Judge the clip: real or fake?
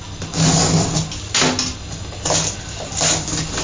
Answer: real